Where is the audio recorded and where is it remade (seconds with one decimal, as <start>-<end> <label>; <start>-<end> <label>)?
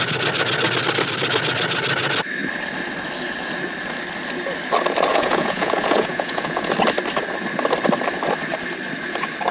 0.0-5.1 recorded; 5.1-6.7 remade; 6.7-9.5 recorded